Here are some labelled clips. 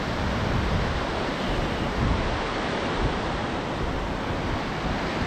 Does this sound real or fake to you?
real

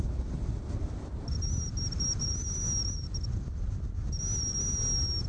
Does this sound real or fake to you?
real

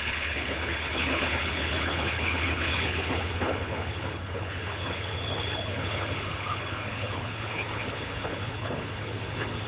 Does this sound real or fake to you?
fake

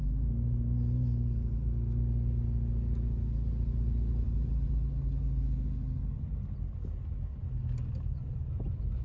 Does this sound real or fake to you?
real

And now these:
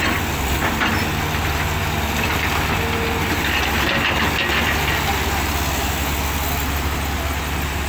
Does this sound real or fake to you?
real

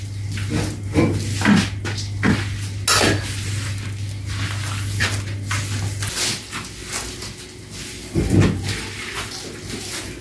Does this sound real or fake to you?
real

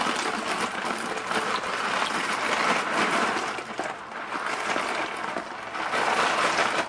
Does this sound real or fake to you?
real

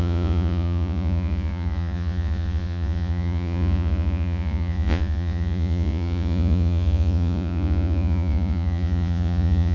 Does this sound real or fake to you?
fake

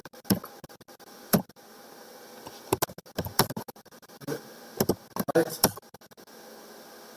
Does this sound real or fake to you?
real